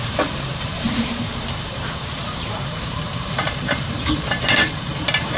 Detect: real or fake fake